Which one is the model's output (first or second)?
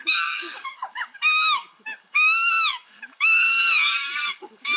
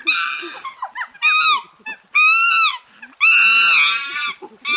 first